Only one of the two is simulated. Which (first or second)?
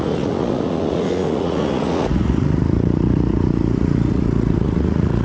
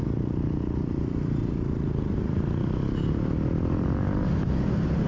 first